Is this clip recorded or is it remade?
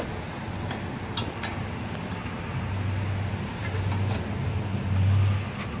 recorded